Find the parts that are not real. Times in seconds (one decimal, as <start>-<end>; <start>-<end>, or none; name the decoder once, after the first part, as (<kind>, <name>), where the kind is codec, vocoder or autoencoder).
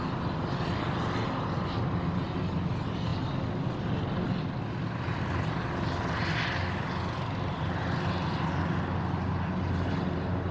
none